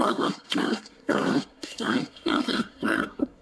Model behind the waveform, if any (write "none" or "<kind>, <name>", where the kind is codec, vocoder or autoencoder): codec, SNAC